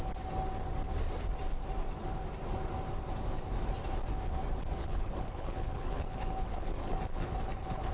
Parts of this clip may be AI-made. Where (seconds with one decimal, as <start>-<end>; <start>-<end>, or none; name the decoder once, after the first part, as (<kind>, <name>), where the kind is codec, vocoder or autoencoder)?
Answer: 4.8-7.9 (codec, HILCodec)